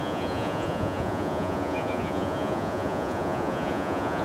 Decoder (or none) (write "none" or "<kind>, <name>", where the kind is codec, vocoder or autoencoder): vocoder, Vocos